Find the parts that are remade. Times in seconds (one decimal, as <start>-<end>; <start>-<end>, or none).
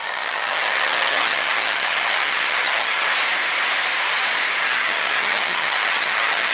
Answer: 0.0-3.1; 4.6-6.5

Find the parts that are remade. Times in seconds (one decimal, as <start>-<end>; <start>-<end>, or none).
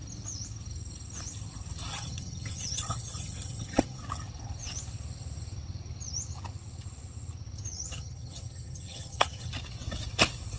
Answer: 1.9-4.0; 7.7-9.5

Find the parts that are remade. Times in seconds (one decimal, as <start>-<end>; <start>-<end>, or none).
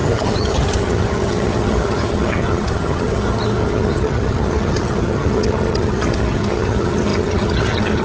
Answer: 0.0-8.0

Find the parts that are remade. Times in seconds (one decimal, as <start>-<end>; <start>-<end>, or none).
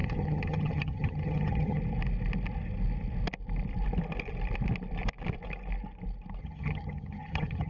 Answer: 0.0-1.8; 6.4-7.7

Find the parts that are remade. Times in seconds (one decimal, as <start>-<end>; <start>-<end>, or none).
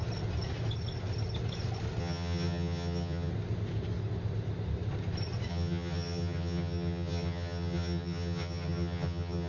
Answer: 2.0-3.3; 5.5-9.5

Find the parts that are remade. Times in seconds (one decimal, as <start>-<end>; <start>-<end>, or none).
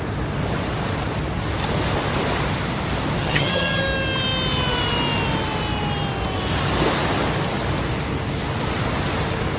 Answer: 3.2-3.8